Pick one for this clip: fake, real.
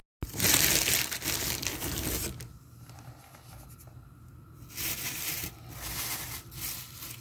real